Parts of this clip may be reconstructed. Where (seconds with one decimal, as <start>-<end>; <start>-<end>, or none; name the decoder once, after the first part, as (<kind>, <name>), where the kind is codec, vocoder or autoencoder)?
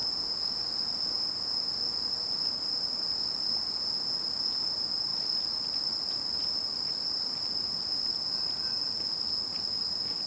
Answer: 5.1-7.3 (vocoder, BigVGAN v2)